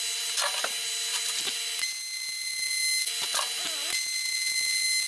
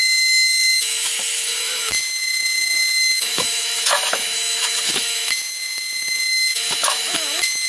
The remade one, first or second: second